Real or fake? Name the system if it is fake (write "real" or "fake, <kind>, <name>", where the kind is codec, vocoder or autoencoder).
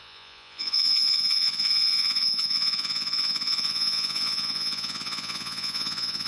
fake, vocoder, Vocos